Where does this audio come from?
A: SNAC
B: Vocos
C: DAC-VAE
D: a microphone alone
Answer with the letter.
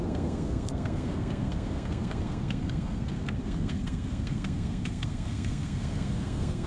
A